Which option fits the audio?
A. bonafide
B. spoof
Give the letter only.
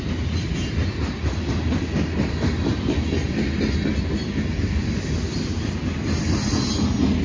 A